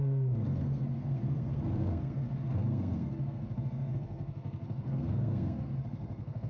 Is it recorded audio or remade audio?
remade